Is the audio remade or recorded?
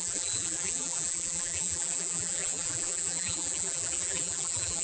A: remade